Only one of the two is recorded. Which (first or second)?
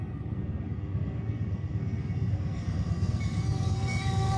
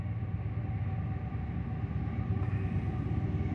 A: second